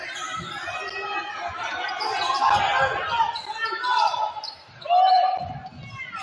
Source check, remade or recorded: recorded